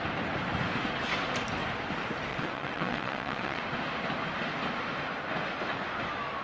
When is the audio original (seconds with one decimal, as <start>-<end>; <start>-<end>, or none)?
0.0-2.3; 3.6-6.4